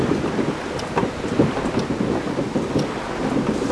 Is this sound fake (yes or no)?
no